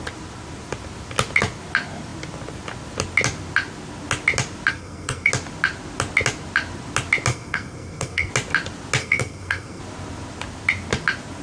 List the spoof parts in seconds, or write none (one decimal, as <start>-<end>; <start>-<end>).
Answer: 4.7-5.3; 7.3-8.3; 9.0-9.8